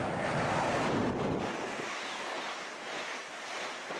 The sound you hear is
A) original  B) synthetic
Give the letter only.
A